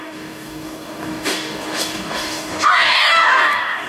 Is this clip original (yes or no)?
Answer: no